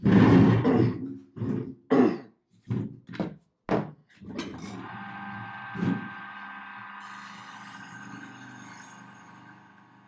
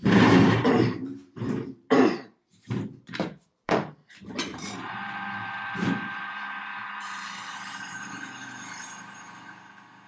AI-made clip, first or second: second